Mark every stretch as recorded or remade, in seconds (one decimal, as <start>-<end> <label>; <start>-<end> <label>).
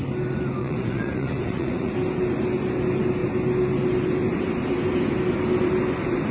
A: 0.0-0.6 recorded; 0.6-1.9 remade; 1.9-6.3 recorded